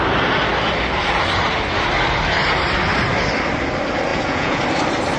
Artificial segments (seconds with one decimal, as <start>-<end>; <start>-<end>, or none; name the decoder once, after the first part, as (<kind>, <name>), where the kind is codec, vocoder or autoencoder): 4.1-4.6 (vocoder, Vocos)